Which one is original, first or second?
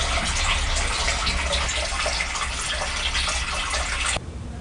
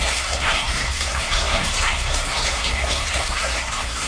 first